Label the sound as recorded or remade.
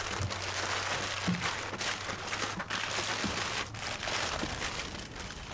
recorded